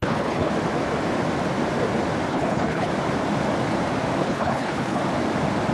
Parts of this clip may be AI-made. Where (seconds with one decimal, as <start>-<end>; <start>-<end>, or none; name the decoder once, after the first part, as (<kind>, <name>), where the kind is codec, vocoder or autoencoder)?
0.0-0.5 (codec, HILCodec); 2.3-2.9; 4.2-5.0